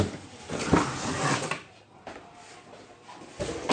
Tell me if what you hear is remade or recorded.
recorded